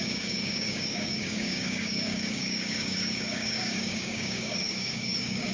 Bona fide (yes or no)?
no